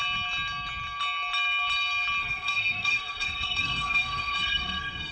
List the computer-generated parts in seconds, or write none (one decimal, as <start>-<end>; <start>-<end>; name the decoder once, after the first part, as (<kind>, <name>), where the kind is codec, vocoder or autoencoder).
2.2-5.1 (codec, SNAC)

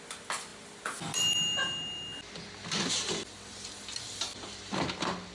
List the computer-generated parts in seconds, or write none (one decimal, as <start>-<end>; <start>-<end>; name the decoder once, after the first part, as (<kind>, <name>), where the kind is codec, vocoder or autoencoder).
none